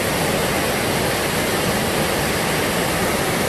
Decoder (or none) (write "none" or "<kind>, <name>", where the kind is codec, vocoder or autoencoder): none